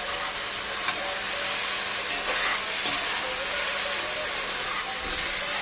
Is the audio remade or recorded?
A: recorded